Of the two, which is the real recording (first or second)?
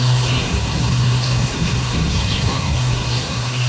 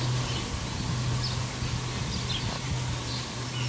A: second